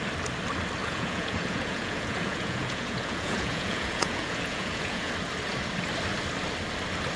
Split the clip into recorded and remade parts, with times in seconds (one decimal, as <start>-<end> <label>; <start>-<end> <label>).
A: 0.0-0.8 recorded; 0.8-5.1 remade; 5.1-7.2 recorded